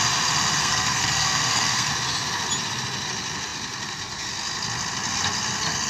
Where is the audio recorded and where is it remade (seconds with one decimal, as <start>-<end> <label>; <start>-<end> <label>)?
0.0-0.6 recorded; 0.6-1.9 remade; 1.9-5.9 recorded